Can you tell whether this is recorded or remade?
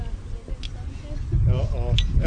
recorded